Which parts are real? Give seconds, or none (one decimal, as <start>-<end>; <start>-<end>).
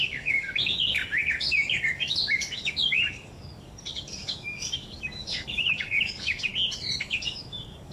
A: 6.5-7.0